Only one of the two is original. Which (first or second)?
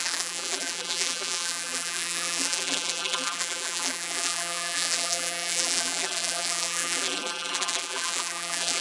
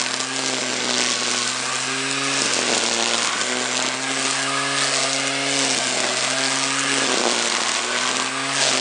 second